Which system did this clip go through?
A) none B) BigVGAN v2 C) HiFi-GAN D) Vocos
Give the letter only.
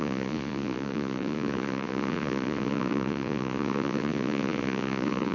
D